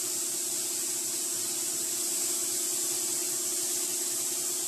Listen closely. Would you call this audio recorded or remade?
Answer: recorded